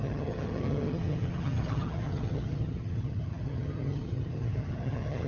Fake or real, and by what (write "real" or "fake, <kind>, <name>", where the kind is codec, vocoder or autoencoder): fake, vocoder, HiFi-GAN